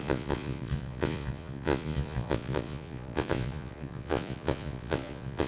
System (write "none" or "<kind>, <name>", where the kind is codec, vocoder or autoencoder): vocoder, Vocos